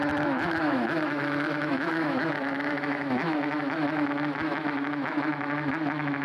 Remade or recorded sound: remade